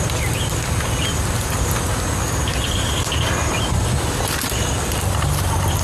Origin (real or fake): real